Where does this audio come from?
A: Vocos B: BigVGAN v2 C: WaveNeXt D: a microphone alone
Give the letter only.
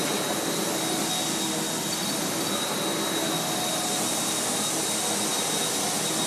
D